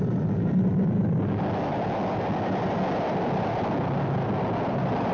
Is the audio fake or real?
real